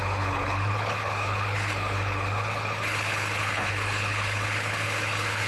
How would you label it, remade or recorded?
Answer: remade